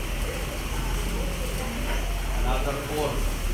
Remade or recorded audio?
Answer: recorded